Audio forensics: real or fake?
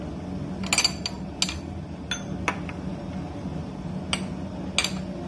real